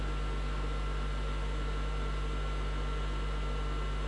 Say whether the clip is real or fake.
real